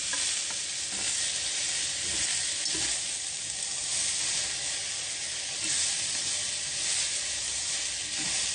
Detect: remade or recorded recorded